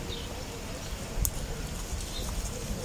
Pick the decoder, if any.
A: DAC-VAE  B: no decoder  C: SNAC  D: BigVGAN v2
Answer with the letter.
B